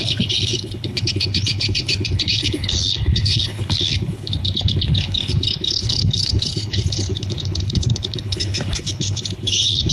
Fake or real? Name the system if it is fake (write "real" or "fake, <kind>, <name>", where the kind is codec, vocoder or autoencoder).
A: fake, codec, HILCodec